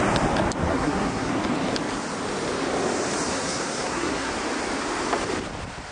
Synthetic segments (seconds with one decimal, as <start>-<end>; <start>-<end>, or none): 0.7-1.3; 3.3-4.3